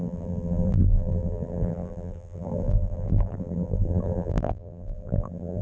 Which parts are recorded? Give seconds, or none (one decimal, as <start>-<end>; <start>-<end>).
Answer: none